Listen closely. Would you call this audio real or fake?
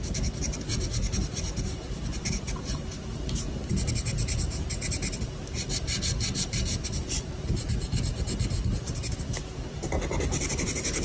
real